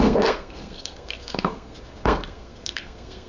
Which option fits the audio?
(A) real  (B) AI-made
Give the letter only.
B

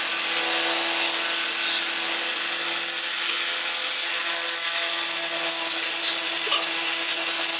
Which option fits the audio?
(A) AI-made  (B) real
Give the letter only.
B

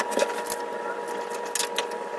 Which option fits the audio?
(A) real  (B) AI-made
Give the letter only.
A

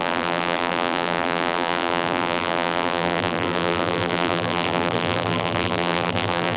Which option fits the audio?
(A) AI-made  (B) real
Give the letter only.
A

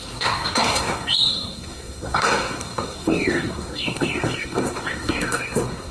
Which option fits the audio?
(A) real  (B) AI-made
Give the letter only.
B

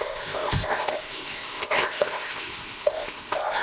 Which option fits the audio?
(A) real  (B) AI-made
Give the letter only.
B